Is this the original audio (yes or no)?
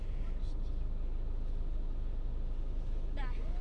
yes